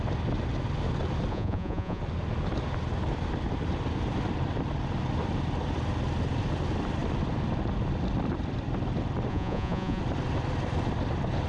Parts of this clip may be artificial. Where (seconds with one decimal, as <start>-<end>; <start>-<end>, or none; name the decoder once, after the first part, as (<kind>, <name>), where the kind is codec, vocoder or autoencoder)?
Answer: 1.3-2.0 (vocoder, Vocos); 9.3-10.0